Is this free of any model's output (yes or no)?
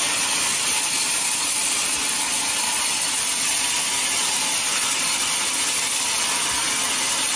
yes